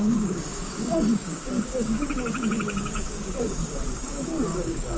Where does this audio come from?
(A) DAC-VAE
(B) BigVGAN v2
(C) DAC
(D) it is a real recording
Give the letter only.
C